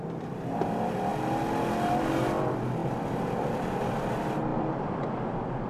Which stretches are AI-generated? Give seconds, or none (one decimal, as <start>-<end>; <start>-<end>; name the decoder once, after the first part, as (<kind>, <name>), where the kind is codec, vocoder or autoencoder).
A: 4.5-5.1 (vocoder, BigVGAN v2)